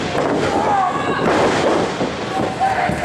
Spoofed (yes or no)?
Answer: no